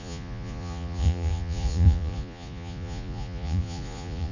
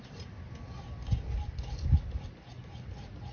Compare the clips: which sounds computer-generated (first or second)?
first